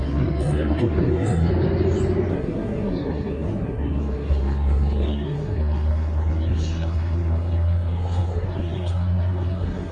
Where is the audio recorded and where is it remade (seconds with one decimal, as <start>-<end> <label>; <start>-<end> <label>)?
0.0-1.5 remade; 1.5-2.3 recorded; 2.3-9.9 remade